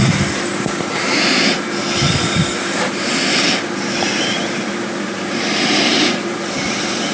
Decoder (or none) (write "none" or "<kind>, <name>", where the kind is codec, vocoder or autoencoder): vocoder, BigVGAN v2